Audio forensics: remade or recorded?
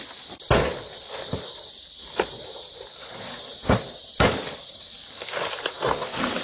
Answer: remade